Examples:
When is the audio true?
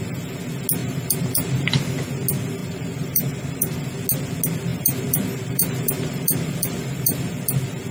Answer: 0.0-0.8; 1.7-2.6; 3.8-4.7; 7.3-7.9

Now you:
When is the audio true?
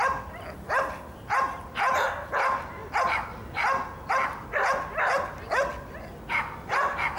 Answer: 0.0-7.2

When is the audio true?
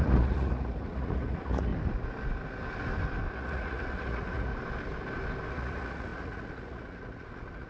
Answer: 1.7-3.3; 4.5-5.5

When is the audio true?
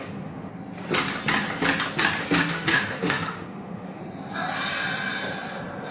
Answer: 0.5-2.2; 4.0-5.9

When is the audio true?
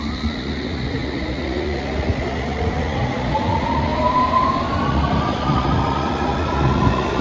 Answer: 3.9-4.8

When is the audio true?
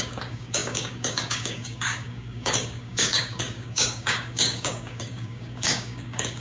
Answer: none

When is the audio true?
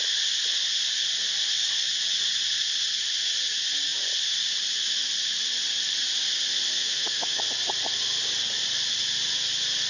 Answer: 0.0-6.8; 7.4-9.9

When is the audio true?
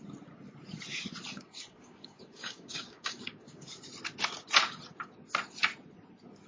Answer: 0.0-1.3; 3.7-6.5